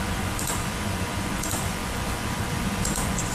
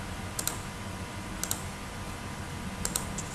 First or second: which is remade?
first